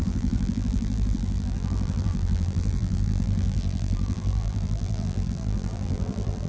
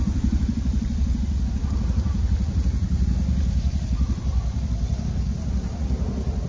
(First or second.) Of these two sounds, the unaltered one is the second